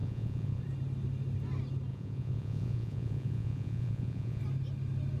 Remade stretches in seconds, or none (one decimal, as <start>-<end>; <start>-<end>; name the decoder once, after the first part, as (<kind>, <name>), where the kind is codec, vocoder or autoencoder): 0.0-0.6 (vocoder, Vocos); 1.9-4.4